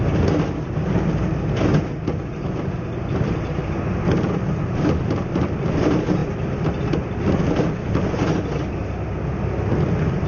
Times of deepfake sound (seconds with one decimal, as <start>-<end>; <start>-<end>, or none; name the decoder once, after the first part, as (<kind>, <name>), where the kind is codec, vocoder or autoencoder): none